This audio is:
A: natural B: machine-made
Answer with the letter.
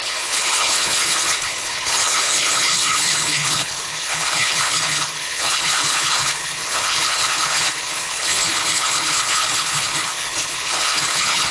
B